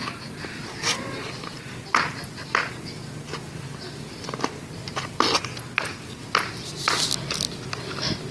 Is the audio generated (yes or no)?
no